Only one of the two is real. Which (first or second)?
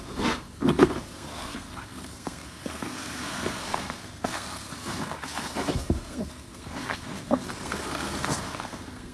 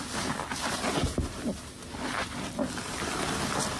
second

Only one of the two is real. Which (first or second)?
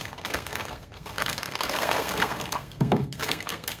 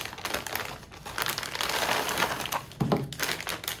second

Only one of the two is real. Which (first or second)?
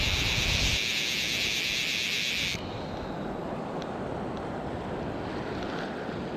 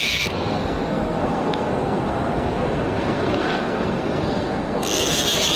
first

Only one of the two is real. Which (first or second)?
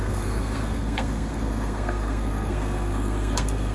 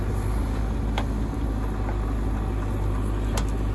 second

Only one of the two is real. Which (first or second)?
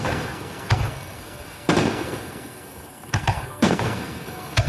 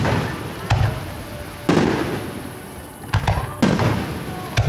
second